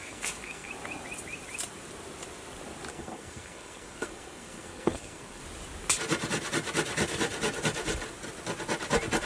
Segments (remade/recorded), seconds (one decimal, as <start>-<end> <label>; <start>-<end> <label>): 0.0-0.7 remade; 0.7-2.9 recorded; 2.9-5.4 remade; 5.4-9.3 recorded